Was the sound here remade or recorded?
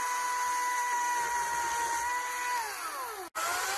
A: recorded